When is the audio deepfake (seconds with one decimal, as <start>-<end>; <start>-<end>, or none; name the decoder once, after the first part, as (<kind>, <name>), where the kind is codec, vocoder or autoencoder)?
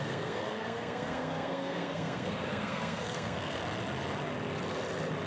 0.0-3.6 (codec, SNAC)